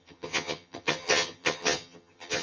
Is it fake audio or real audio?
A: fake